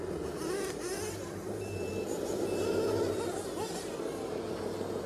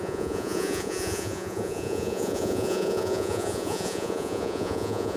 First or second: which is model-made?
second